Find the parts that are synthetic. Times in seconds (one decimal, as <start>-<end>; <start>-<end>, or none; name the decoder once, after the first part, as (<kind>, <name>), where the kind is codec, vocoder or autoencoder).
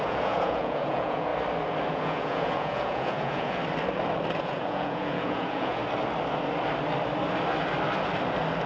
0.0-1.3 (vocoder, Vocos); 1.9-3.6; 4.4-5.8